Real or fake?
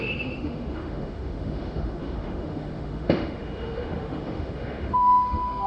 fake